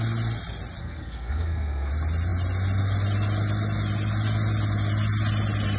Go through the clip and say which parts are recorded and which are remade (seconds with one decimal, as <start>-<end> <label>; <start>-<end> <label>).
0.0-0.8 recorded; 0.8-1.9 remade; 1.9-5.8 recorded